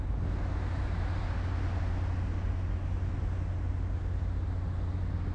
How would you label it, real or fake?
real